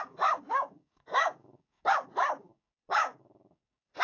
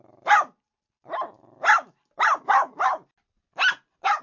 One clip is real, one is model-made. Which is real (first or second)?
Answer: second